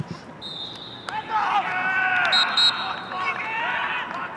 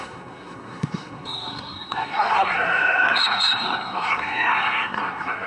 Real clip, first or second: first